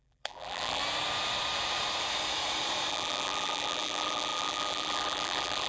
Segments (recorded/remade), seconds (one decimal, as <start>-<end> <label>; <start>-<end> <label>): 0.0-0.8 remade; 0.8-2.9 recorded; 2.9-5.7 remade